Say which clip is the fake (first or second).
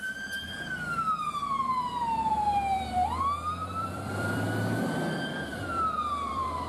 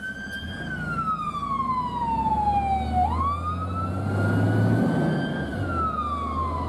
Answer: first